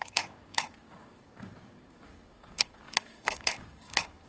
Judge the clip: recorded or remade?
remade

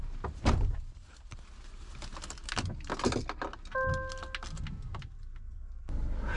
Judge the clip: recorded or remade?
recorded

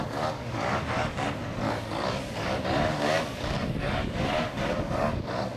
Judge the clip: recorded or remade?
remade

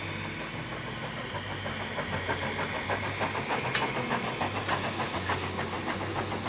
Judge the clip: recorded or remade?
recorded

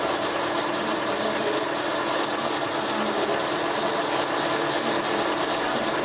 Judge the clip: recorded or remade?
recorded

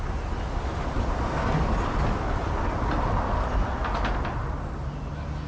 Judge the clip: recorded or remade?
recorded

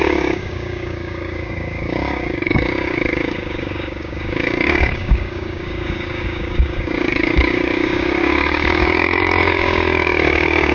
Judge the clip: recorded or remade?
remade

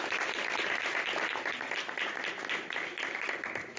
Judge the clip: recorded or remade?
recorded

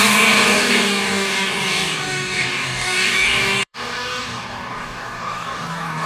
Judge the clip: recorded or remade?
remade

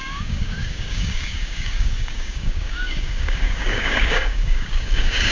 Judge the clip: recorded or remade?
remade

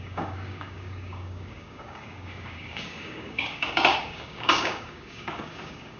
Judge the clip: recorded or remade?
remade